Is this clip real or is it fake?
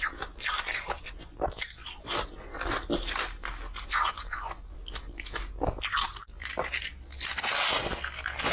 real